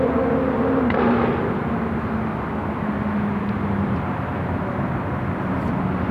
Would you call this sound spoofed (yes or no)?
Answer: no